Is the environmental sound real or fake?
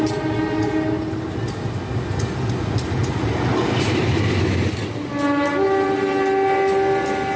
real